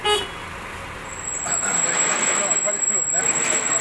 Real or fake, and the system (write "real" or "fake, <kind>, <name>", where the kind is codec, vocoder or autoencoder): real